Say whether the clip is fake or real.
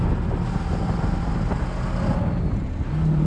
real